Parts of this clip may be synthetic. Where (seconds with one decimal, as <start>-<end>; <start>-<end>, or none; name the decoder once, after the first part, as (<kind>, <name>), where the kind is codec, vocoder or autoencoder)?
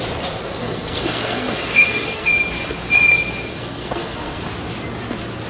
0.6-2.3 (codec, SNAC); 3.5-4.4